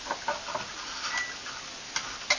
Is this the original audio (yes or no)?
yes